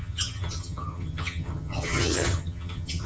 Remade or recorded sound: remade